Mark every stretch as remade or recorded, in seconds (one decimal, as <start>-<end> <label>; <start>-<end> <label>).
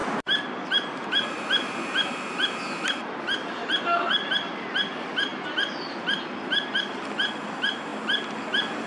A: 0.0-8.9 recorded